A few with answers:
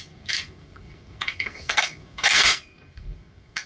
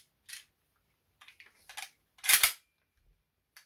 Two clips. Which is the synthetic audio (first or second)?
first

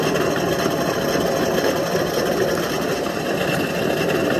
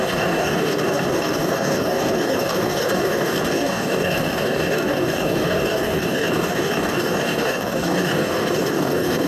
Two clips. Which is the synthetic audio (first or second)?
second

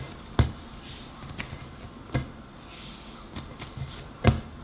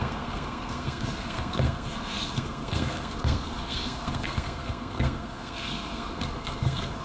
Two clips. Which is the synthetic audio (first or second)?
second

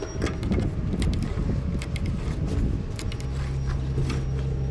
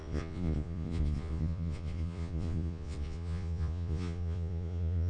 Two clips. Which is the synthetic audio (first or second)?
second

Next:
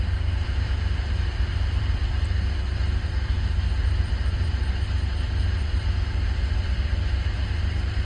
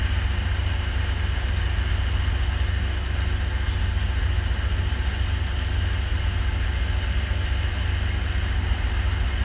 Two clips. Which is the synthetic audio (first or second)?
first